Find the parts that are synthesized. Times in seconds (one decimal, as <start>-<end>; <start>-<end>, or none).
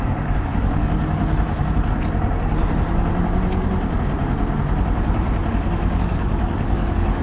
0.0-1.2; 5.5-7.2